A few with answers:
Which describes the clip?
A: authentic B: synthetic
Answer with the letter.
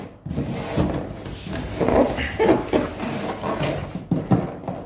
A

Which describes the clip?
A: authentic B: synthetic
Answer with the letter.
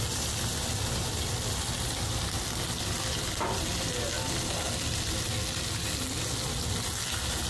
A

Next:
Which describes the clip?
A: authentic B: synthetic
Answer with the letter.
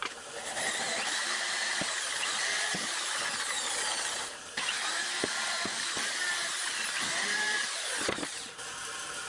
B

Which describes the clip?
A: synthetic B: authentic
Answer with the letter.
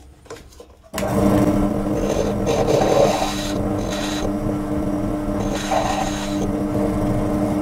B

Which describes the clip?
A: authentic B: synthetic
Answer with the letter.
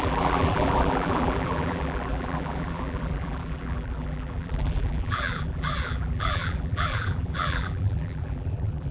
B